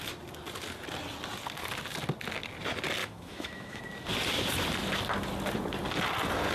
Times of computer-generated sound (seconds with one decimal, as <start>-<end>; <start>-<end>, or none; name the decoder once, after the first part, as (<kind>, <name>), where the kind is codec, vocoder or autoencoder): 3.0-3.8 (autoencoder, DAC-VAE)